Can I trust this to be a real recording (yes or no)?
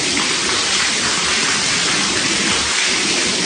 no